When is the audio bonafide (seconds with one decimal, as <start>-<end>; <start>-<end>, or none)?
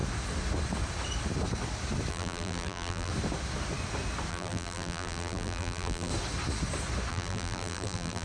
0.0-2.1; 3.1-4.3; 6.1-7.1